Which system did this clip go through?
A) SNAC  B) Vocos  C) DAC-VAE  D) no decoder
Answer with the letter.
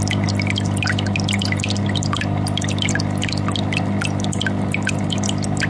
D